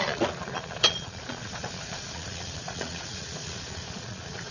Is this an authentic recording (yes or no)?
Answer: no